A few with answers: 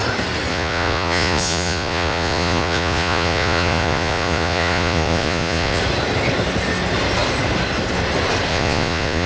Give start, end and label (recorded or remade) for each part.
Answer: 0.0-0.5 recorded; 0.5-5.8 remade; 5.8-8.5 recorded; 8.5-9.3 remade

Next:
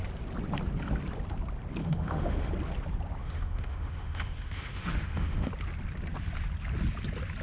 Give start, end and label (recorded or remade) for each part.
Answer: 0.0-1.8 recorded; 1.8-2.5 remade; 2.5-3.2 recorded; 3.2-5.5 remade; 5.5-7.4 recorded

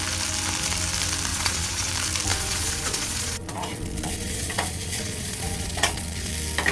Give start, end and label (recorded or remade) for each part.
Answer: 0.0-1.3 recorded; 1.3-1.9 remade; 1.9-2.3 recorded; 2.3-6.3 remade; 6.3-6.7 recorded

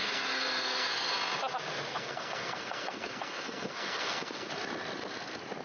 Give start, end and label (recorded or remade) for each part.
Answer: 0.0-1.1 remade; 1.1-1.9 recorded; 1.9-4.5 remade; 4.5-5.6 recorded

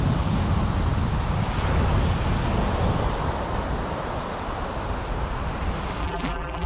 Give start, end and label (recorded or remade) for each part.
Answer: 0.0-6.0 recorded; 6.0-6.7 remade

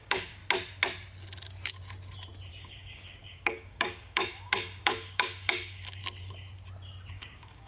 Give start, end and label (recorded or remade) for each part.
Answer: 0.0-0.4 remade; 0.4-2.5 recorded; 2.5-6.0 remade; 6.0-7.1 recorded; 7.1-7.7 remade